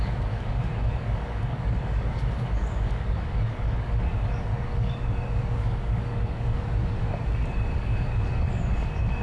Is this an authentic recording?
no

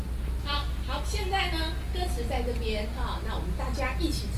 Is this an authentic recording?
yes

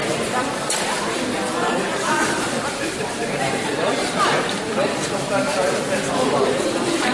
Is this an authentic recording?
no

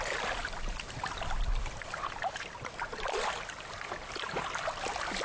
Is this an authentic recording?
yes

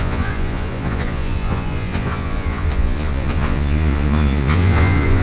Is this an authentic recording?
no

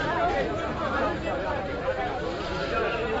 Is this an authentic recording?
yes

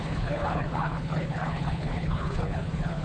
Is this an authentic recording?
no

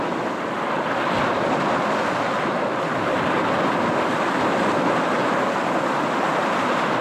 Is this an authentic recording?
yes